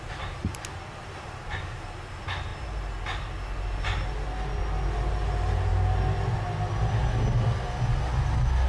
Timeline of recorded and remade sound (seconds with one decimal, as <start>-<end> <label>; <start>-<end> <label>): 0.0-0.4 recorded; 0.4-1.5 remade; 1.5-8.7 recorded